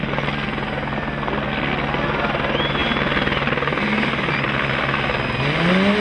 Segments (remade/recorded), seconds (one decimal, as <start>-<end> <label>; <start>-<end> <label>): 0.0-6.0 recorded